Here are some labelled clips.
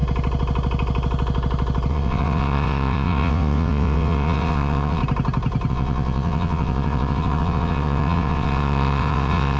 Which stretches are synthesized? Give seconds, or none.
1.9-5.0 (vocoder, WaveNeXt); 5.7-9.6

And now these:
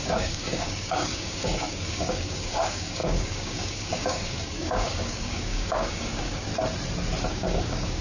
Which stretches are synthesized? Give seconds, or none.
0.0-6.5 (codec, DAC); 7.3-8.0

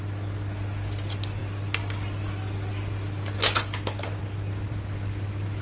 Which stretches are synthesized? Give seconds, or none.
none

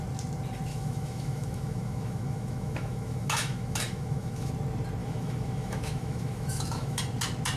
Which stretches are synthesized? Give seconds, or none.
0.7-4.5 (autoencoder, DAC-VAE); 5.0-7.0

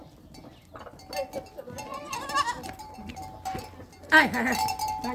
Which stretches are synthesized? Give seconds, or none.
none

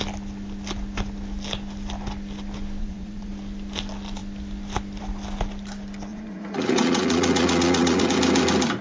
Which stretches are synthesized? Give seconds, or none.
2.8-3.3 (vocoder, Vocos); 6.1-8.0

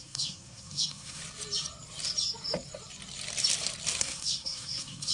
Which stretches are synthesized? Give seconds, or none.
0.0-1.2 (codec, SNAC); 4.0-5.1